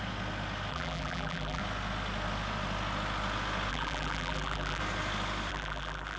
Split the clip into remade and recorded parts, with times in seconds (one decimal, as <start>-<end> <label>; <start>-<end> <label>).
0.0-0.7 recorded; 0.7-1.6 remade; 1.6-3.7 recorded; 3.7-4.8 remade; 4.8-5.5 recorded; 5.5-6.2 remade